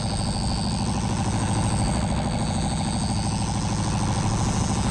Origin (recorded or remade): recorded